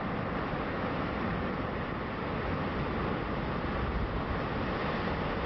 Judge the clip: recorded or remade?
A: recorded